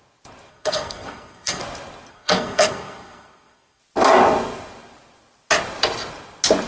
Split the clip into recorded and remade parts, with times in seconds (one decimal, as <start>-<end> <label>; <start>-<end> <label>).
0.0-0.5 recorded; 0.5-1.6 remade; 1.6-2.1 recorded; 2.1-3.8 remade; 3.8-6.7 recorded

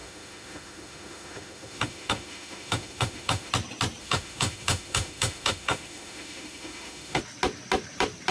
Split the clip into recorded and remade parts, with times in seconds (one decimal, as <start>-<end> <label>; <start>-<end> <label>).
0.0-3.5 remade; 3.5-4.0 recorded; 4.0-7.2 remade; 7.2-8.3 recorded

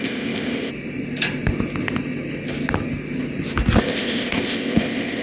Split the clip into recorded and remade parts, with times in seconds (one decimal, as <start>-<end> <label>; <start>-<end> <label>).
0.0-0.7 remade; 0.7-3.8 recorded; 3.8-5.2 remade